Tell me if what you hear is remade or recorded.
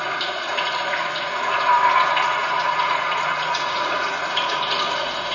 remade